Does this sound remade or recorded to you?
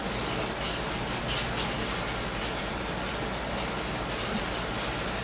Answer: recorded